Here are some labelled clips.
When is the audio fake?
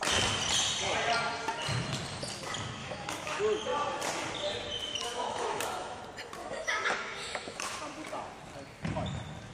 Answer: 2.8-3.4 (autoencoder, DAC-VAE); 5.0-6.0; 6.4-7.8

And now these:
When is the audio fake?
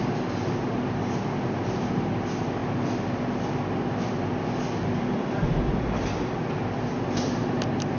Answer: none